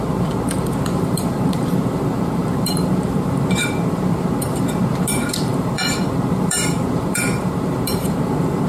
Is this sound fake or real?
fake